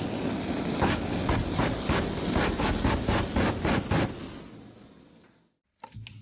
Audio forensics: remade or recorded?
recorded